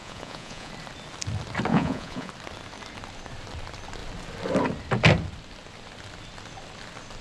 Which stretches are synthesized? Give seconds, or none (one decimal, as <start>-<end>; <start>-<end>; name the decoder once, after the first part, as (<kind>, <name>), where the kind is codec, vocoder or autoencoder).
0.0-0.7 (vocoder, Vocos); 1.7-2.3